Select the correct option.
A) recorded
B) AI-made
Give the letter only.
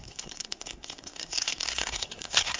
B